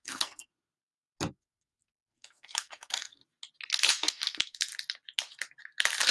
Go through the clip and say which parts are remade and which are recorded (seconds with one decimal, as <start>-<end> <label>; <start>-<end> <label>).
0.0-0.5 remade; 0.5-1.3 recorded; 1.3-3.2 remade; 3.2-3.9 recorded; 3.9-4.7 remade; 4.7-6.1 recorded